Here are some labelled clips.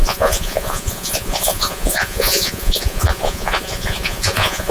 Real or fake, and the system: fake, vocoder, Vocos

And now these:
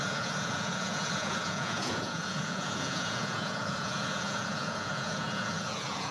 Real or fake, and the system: fake, vocoder, Vocos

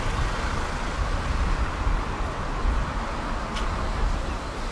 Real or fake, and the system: real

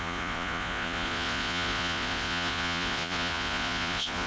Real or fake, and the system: fake, vocoder, Vocos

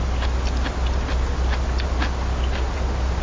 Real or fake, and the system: real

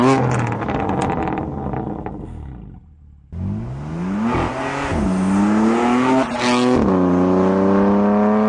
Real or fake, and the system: real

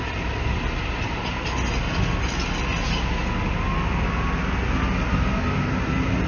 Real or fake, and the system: real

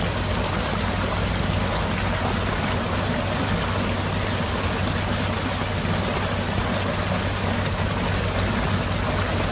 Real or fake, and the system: real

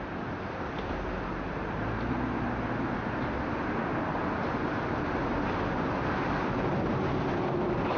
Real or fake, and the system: real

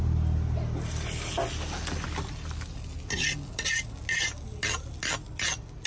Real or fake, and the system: real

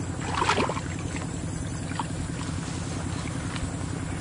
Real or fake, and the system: real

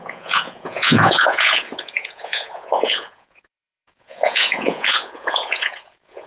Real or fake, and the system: fake, vocoder, Vocos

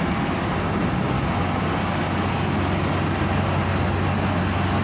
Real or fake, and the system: real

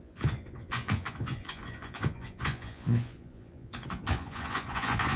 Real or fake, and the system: fake, vocoder, Vocos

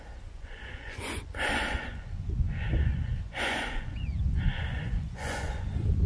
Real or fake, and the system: fake, vocoder, Vocos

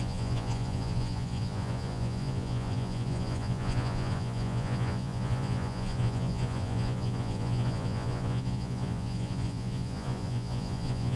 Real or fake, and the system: fake, vocoder, Vocos